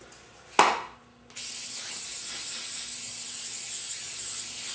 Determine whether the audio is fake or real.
real